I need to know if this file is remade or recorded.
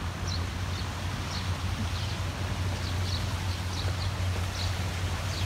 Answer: recorded